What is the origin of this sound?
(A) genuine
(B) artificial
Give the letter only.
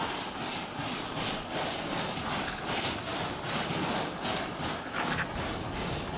A